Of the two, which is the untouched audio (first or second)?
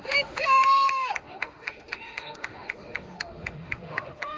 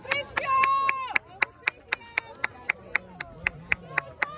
second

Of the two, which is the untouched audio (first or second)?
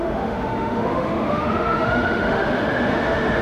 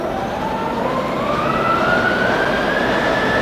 second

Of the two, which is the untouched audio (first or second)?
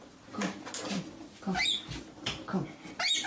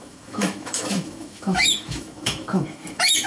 first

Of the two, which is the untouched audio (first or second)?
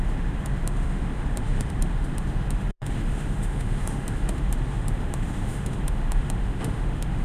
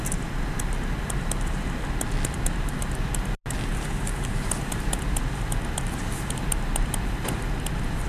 second